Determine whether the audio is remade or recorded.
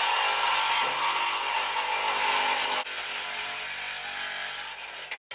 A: recorded